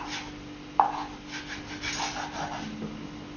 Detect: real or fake real